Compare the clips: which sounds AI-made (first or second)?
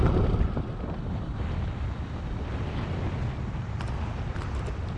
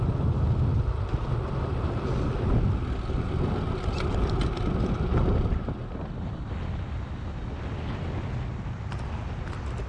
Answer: first